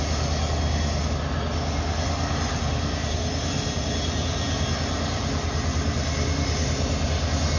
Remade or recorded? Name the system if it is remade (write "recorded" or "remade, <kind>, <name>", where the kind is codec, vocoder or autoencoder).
recorded